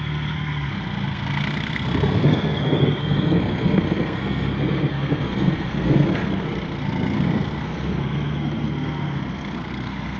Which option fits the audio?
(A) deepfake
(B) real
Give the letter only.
A